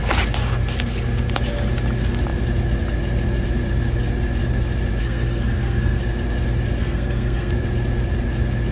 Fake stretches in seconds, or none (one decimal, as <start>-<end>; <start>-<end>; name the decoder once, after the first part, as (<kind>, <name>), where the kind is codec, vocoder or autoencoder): 5.0-6.0 (codec, SNAC); 6.8-7.5

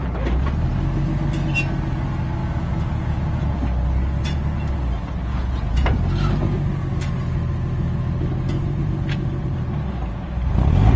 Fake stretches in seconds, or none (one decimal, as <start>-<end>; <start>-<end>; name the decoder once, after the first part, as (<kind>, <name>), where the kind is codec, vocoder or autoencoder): 2.4-3.6 (vocoder, Vocos); 5.3-6.0; 8.8-9.4

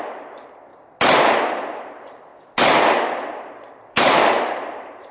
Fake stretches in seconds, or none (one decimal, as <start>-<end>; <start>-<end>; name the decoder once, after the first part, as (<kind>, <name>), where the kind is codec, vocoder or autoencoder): 0.0-0.7 (vocoder, BigVGAN v2); 1.2-2.3; 3.6-5.1

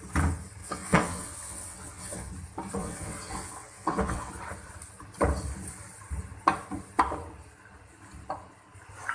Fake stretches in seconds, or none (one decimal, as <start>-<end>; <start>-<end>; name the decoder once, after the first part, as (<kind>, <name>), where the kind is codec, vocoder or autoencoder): 0.6-2.3 (vocoder, WaveNeXt); 2.8-4.3